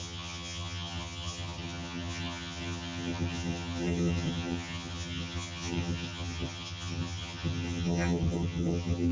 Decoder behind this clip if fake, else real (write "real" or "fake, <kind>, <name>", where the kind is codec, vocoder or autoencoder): fake, vocoder, HiFi-GAN